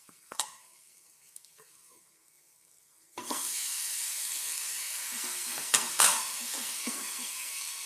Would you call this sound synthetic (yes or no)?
yes